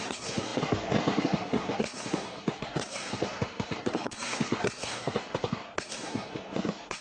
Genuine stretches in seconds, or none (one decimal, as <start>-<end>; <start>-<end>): none